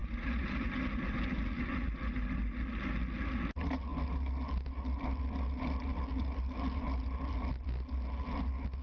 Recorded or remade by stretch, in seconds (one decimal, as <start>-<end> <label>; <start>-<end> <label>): 0.0-0.7 remade; 0.7-8.8 recorded